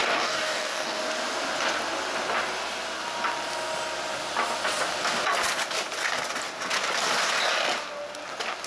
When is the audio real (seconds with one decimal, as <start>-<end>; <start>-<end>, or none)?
1.0-8.7